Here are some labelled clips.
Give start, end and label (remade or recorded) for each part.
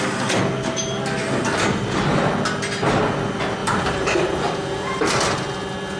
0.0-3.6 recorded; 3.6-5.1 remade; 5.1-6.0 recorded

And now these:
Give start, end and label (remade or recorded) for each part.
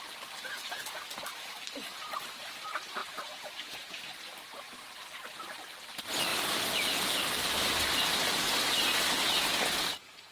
0.0-3.0 recorded; 3.0-4.6 remade; 4.6-6.3 recorded; 6.3-7.0 remade; 7.0-7.4 recorded; 7.4-8.1 remade; 8.1-10.3 recorded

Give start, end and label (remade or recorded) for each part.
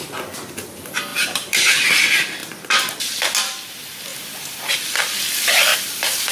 0.0-1.1 recorded; 1.1-1.9 remade; 1.9-5.7 recorded; 5.7-6.3 remade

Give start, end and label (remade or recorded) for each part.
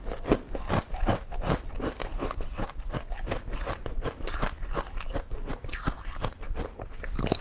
0.0-2.1 recorded; 2.1-2.6 remade; 2.6-7.4 recorded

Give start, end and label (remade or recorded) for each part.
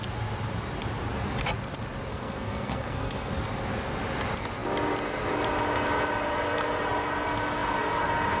0.0-2.1 recorded; 2.1-3.3 remade; 3.3-8.4 recorded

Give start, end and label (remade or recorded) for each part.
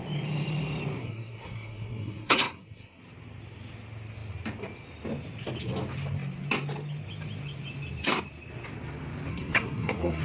0.0-1.0 recorded; 1.0-3.0 remade; 3.0-9.3 recorded; 9.3-10.2 remade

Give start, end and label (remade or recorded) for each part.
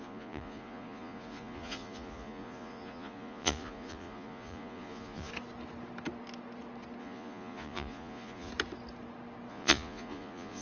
0.0-5.3 remade; 5.3-7.0 recorded; 7.0-8.5 remade; 8.5-9.5 recorded; 9.5-10.6 remade